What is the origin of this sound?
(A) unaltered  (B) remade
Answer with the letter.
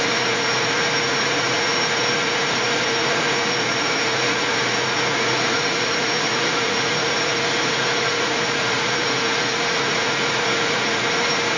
B